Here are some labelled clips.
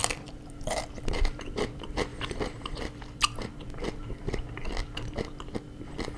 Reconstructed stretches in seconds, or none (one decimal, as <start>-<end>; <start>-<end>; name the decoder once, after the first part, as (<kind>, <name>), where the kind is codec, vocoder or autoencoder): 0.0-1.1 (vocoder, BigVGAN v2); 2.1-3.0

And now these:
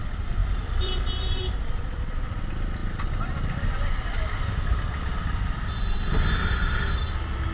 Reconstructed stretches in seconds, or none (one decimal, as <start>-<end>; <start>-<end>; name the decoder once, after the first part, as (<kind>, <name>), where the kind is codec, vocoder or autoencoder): 0.4-1.5 (vocoder, BigVGAN v2); 2.8-7.1

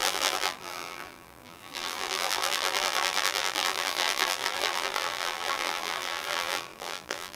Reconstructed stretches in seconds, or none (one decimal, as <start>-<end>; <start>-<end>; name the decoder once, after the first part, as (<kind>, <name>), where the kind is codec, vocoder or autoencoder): 0.0-7.4 (vocoder, BigVGAN v2)

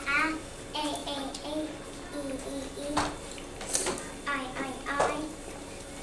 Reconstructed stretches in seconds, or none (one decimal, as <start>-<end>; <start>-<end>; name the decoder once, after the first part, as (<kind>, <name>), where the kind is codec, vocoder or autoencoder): none

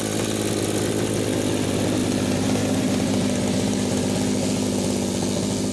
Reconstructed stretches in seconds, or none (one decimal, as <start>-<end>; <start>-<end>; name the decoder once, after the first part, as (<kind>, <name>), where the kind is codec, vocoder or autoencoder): 2.0-4.0 (vocoder, BigVGAN v2)

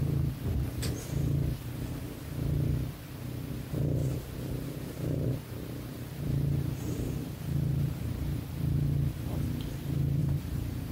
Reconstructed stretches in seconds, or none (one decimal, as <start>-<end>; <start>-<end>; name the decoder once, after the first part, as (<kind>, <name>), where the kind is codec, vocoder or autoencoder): 4.0-8.2 (vocoder, BigVGAN v2); 10.2-10.9

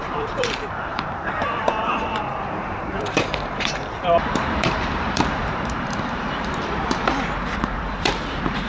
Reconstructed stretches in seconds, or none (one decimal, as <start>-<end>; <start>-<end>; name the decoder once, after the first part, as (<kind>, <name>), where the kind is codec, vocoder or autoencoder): 0.0-7.1 (vocoder, BigVGAN v2); 7.6-8.7